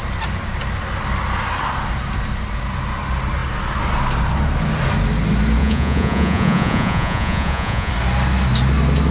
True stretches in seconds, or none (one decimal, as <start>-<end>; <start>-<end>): 0.0-5.6; 7.9-9.1